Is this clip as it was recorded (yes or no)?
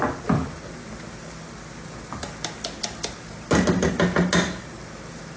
yes